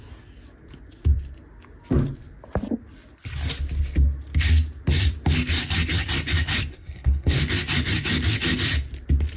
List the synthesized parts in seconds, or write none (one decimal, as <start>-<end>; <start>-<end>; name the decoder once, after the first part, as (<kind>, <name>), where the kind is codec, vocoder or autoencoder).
6.7-7.4 (codec, SNAC)